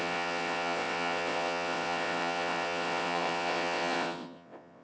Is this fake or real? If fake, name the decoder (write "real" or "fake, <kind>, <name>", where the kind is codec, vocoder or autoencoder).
fake, vocoder, WaveNeXt